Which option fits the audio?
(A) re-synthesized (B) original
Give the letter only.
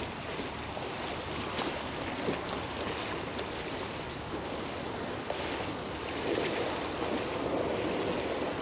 B